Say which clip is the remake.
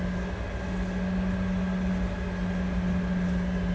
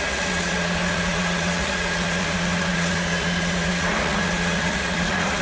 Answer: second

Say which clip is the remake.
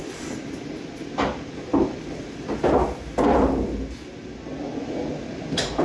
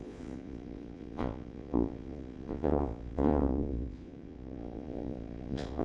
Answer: second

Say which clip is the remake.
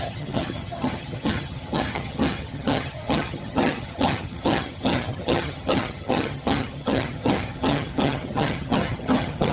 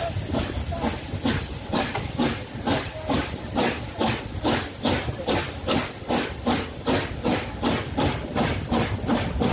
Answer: first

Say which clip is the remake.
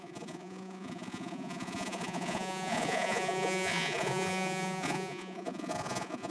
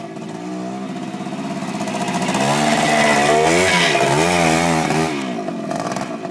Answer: first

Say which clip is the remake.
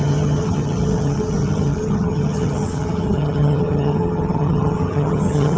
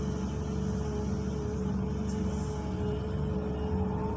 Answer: first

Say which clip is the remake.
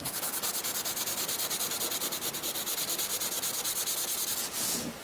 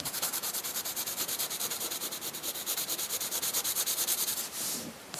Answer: second